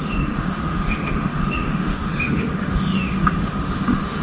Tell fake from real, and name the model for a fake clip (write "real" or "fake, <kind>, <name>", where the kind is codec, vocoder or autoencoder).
fake, autoencoder, DAC-VAE